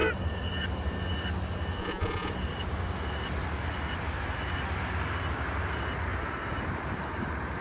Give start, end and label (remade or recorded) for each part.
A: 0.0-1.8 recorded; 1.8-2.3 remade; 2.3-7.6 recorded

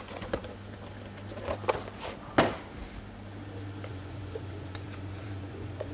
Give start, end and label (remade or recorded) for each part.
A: 0.0-0.4 remade; 0.4-3.9 recorded; 3.9-5.9 remade

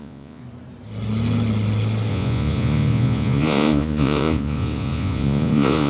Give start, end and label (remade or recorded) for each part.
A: 0.0-0.4 remade; 0.4-2.1 recorded; 2.1-5.9 remade

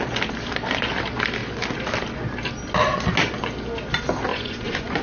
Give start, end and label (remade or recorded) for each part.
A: 0.0-4.3 recorded; 4.3-5.0 remade

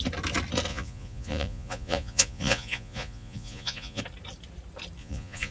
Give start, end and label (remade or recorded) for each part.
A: 0.0-0.7 recorded; 0.7-4.0 remade; 4.0-5.0 recorded; 5.0-5.5 remade

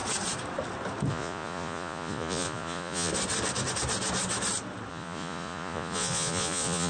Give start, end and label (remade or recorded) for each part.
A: 0.0-1.1 recorded; 1.1-3.1 remade; 3.1-4.9 recorded; 4.9-6.9 remade

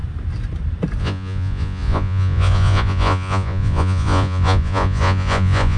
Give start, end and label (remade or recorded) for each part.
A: 0.0-1.0 recorded; 1.0-5.8 remade

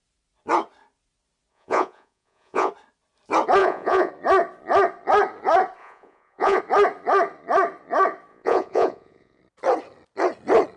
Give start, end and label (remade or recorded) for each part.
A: 0.0-1.5 recorded; 1.5-2.7 remade; 2.7-3.6 recorded; 3.6-4.1 remade; 4.1-5.8 recorded; 5.8-6.6 remade; 6.6-8.3 recorded; 8.3-9.4 remade; 9.4-10.8 recorded